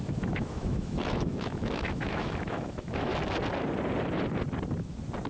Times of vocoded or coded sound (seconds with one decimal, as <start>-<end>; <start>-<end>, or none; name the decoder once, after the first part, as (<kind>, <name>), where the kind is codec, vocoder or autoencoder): 0.0-3.1 (autoencoder, DAC-VAE)